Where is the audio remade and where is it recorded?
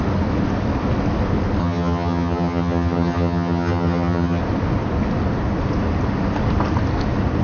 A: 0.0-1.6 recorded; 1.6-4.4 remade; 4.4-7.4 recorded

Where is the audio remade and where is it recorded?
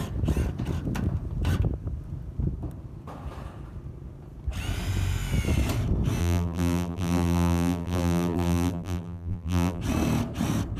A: 0.0-6.2 recorded; 6.2-9.8 remade; 9.8-10.8 recorded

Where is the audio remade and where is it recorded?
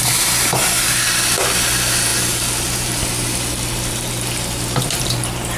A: 0.0-5.6 recorded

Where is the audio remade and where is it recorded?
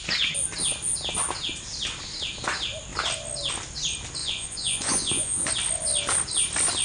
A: 0.0-4.2 recorded; 4.2-5.5 remade; 5.5-6.8 recorded